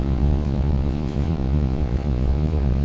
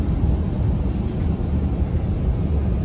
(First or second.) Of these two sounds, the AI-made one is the first